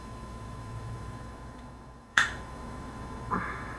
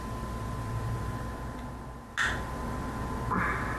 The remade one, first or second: first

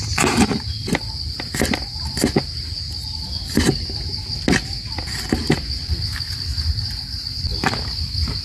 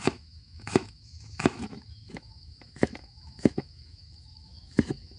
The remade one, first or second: second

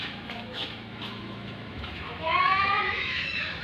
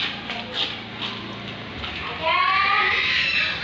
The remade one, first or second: first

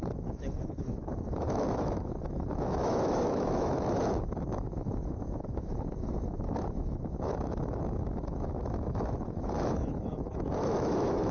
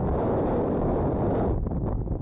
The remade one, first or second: first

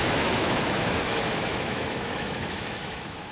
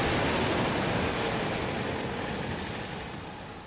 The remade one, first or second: first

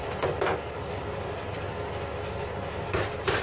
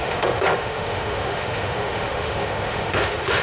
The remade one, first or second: second